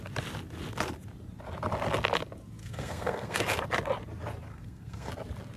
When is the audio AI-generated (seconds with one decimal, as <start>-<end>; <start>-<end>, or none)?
2.6-3.4; 4.5-5.1